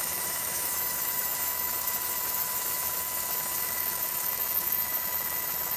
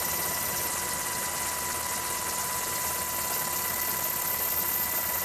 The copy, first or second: first